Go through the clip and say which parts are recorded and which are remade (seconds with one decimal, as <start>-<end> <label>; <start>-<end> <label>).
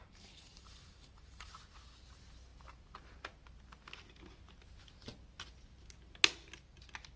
0.0-1.5 remade; 1.5-7.2 recorded